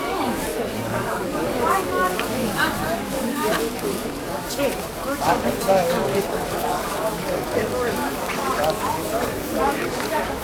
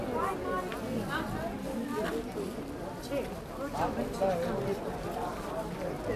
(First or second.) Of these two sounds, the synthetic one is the first